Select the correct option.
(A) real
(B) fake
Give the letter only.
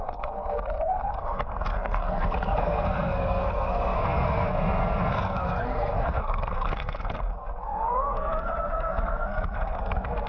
B